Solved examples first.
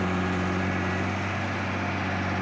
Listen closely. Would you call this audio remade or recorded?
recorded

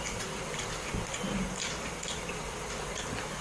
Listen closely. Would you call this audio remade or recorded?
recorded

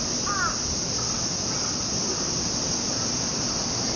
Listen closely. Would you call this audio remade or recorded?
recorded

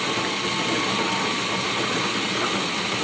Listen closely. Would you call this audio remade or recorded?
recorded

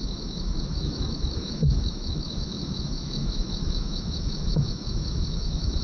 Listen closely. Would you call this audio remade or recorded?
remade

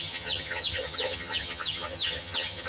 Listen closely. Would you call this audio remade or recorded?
remade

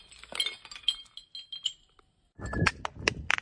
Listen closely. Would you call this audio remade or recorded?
recorded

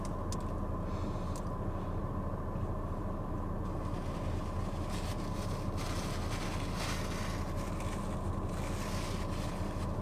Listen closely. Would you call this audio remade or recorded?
recorded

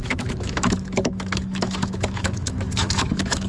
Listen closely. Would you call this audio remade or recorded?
remade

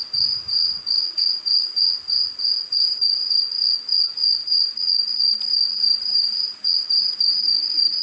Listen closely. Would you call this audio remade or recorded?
remade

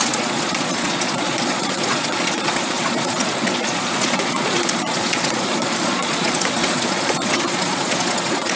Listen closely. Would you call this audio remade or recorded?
remade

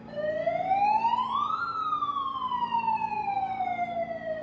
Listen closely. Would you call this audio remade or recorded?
recorded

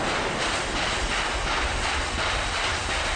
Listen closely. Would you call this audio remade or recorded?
recorded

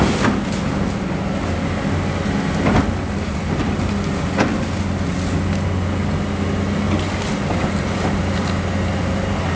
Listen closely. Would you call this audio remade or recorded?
recorded